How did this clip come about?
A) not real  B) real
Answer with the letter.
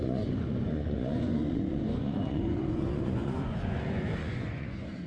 A